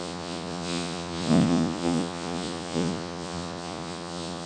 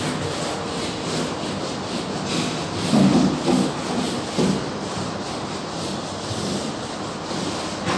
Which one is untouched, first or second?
second